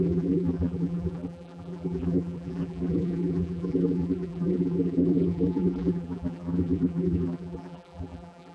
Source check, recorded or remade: remade